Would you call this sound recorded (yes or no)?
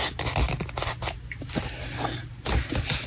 yes